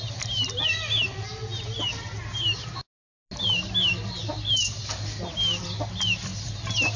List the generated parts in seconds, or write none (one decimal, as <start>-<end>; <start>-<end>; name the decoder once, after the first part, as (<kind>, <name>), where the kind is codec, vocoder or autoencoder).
none